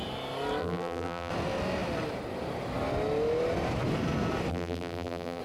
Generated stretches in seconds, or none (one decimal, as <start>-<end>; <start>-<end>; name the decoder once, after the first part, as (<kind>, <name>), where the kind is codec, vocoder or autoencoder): 0.6-1.3 (vocoder, BigVGAN v2); 4.5-5.4